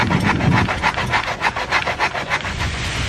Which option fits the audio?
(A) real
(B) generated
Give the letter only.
B